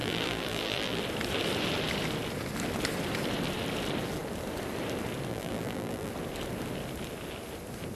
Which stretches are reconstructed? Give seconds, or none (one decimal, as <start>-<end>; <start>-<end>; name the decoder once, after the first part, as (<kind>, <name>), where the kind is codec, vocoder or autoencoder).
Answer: 0.0-1.0 (vocoder, BigVGAN v2); 5.3-6.1